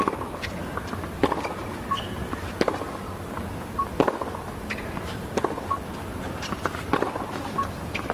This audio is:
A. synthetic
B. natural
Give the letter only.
B